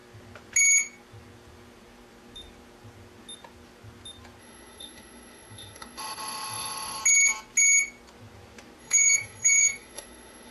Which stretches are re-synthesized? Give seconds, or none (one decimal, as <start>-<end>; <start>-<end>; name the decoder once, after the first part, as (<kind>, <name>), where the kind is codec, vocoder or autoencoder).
4.4-7.0 (autoencoder, DAC-VAE); 8.8-10.5